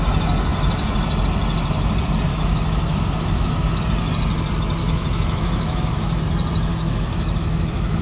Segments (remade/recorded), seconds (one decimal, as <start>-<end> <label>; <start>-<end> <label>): 0.0-2.3 recorded; 2.3-3.8 remade; 3.8-4.8 recorded; 4.8-6.2 remade; 6.2-6.7 recorded; 6.7-8.0 remade